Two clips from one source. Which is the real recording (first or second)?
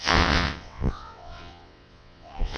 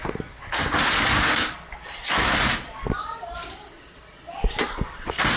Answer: second